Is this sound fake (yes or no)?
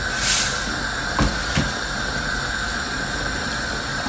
no